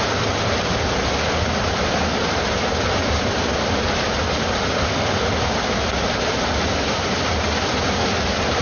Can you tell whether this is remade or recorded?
recorded